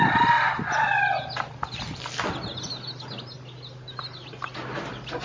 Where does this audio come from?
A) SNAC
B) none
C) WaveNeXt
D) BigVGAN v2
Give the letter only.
B